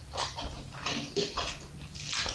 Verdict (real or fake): real